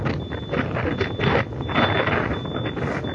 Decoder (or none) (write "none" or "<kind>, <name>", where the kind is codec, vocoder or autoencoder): none